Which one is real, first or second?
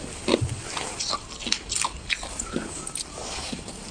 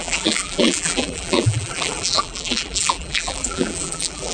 first